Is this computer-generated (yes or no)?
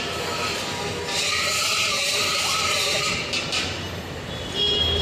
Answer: yes